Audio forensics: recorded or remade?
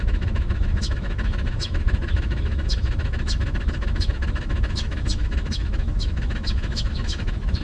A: remade